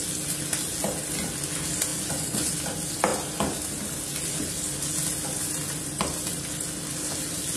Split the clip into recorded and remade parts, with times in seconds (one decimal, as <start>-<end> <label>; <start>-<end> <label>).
0.0-1.9 recorded; 1.9-2.5 remade; 2.5-7.6 recorded